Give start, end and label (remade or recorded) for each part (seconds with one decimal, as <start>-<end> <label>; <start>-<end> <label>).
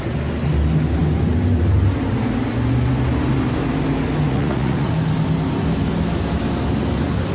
0.0-4.3 recorded; 4.3-4.9 remade; 4.9-7.3 recorded